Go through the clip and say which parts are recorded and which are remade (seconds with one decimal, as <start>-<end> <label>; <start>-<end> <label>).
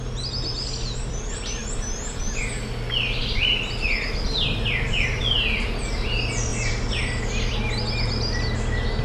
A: 0.0-1.6 recorded; 1.6-5.2 remade; 5.2-6.5 recorded; 6.5-7.0 remade; 7.0-9.0 recorded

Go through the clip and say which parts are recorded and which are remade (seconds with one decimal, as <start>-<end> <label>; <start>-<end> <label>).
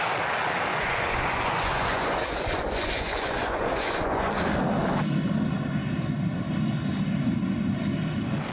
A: 0.0-0.7 recorded; 0.7-4.3 remade; 4.3-8.5 recorded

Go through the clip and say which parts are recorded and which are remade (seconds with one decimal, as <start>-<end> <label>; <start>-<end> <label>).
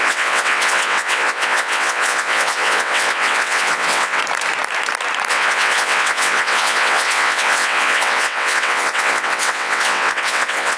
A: 0.0-4.2 remade; 4.2-5.3 recorded; 5.3-10.8 remade